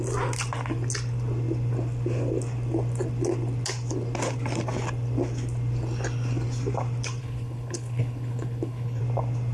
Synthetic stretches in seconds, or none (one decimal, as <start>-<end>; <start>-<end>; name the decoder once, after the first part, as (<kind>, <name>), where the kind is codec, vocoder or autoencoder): 7.2-9.0 (codec, HILCodec)